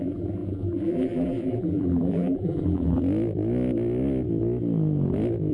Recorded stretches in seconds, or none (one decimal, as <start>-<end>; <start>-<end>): 3.0-5.5